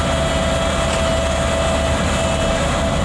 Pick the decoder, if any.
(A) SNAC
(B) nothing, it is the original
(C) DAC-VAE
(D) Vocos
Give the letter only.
B